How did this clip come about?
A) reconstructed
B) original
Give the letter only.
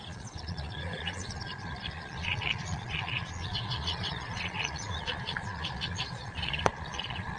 A